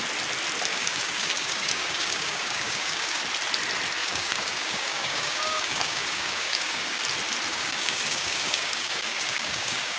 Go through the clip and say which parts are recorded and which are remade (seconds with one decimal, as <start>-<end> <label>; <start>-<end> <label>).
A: 0.0-0.7 recorded; 0.7-3.2 remade; 3.2-4.0 recorded; 4.0-7.0 remade; 7.0-7.5 recorded; 7.5-10.0 remade